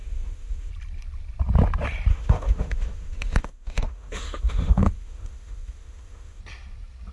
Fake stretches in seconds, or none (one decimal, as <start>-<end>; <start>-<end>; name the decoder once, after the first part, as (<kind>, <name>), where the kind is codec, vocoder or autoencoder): 0.0-0.7 (autoencoder, DAC-VAE); 2.1-6.4